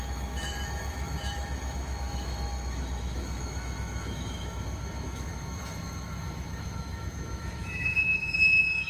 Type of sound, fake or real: fake